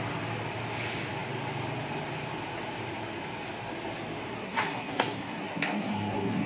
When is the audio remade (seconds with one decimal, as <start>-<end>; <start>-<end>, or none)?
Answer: 4.3-6.5